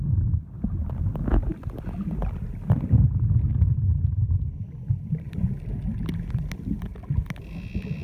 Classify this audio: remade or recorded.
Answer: recorded